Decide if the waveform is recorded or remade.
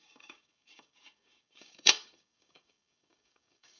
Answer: remade